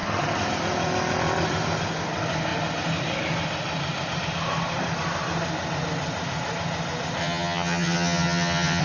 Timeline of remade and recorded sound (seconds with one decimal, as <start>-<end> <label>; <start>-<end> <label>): 0.0-7.2 recorded; 7.2-8.8 remade